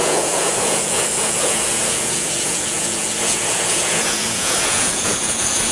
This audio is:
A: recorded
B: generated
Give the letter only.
B